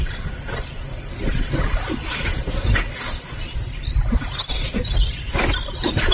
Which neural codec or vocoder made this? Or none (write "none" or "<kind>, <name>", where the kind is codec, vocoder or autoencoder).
none